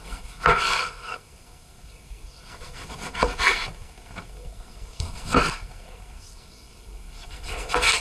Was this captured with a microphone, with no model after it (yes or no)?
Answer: no